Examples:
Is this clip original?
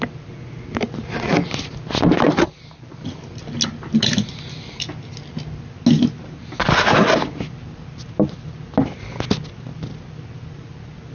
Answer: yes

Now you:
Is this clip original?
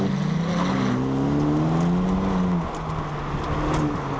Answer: yes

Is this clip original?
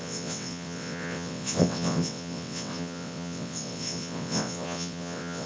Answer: no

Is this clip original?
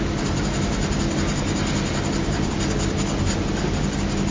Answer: yes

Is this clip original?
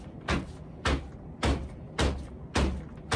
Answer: yes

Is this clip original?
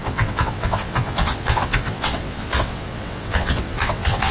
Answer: no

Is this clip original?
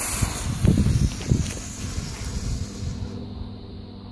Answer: yes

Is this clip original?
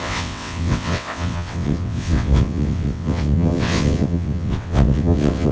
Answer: no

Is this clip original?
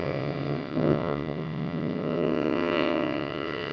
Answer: no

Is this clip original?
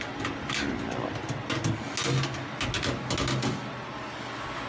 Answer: yes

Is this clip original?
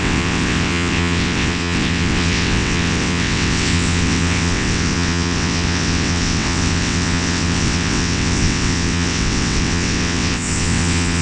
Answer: no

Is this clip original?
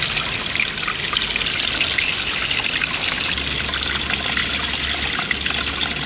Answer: yes